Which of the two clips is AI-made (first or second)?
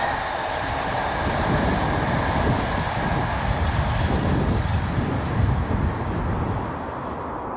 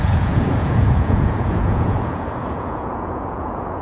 second